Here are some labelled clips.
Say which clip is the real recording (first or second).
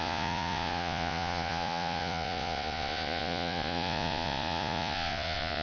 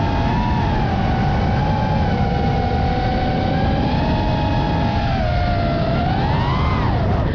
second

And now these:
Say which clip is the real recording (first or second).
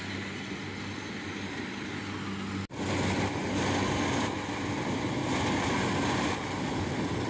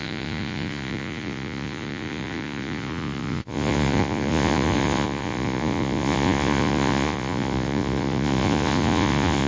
first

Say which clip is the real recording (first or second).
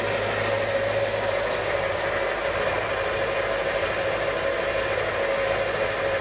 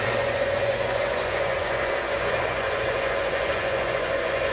first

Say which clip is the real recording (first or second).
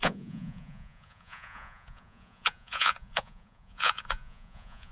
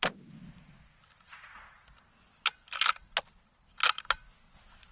second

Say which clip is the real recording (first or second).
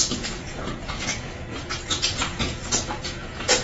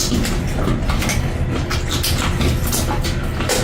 second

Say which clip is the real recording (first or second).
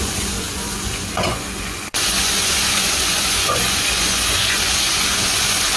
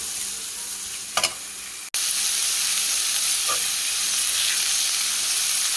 second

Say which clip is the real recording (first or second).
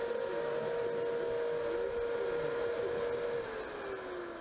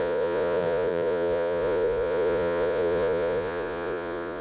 first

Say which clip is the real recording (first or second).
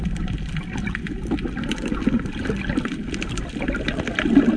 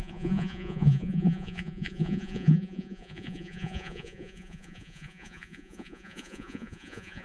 first